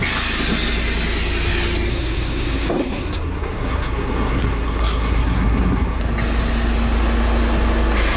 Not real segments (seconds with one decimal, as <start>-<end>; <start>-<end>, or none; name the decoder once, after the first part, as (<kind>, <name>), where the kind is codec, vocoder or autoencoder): 1.9-6.0 (codec, SNAC)